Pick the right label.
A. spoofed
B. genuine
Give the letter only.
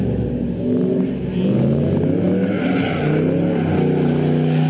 B